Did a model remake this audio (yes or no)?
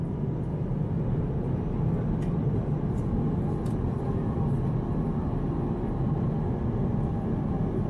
no